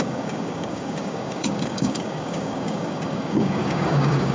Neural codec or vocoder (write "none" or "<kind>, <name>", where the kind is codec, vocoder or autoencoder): codec, DAC